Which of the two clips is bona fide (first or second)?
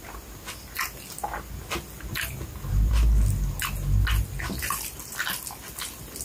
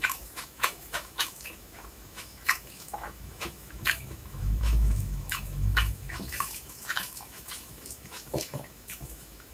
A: first